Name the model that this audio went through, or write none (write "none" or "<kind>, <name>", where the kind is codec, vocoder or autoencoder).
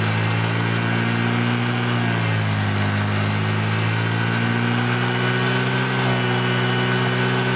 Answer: none